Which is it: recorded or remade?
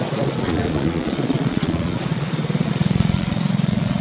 remade